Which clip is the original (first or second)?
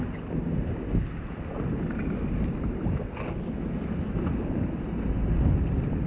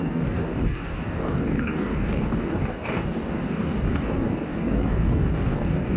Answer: first